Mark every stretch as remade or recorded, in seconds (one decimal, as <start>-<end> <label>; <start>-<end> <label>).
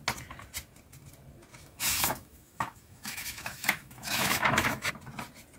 0.0-1.5 recorded; 1.5-4.9 remade; 4.9-5.6 recorded